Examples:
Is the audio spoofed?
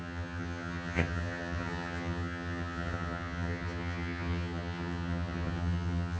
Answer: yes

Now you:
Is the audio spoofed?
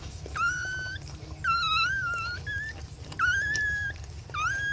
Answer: no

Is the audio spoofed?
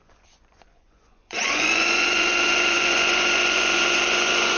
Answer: yes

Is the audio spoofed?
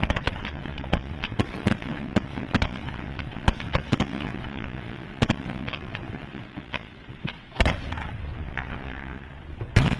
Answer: yes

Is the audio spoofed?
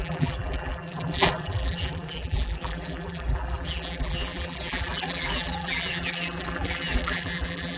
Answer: yes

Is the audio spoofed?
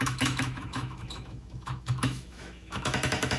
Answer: yes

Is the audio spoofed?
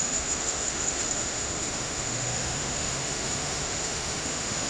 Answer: yes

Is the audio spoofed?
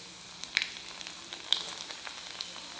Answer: no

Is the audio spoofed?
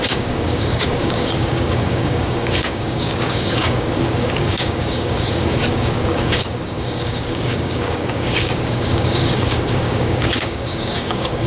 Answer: yes